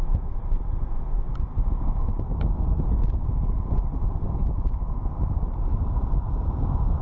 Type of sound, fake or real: real